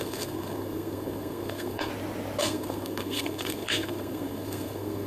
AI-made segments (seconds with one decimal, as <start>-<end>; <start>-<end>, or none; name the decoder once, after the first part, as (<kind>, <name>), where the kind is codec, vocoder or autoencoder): 0.0-1.9 (codec, SNAC); 2.4-5.1